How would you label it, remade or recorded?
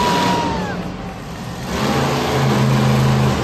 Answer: recorded